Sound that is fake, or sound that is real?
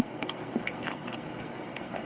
fake